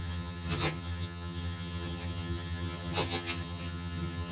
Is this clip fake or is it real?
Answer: fake